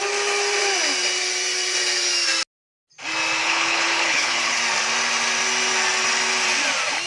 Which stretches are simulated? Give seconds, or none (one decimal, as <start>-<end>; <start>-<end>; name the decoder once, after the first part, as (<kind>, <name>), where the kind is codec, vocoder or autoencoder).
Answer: 3.4-4.6 (codec, HILCodec)